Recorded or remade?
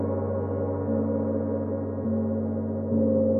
recorded